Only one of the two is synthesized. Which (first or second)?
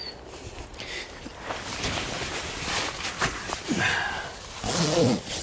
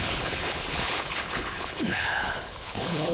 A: second